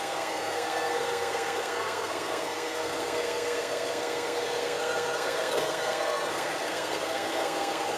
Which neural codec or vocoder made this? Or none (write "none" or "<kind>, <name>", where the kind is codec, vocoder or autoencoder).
codec, SNAC